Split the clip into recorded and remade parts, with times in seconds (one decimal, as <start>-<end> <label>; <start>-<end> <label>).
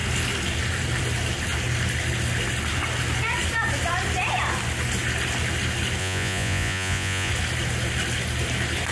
0.0-6.0 recorded; 6.0-7.3 remade; 7.3-8.9 recorded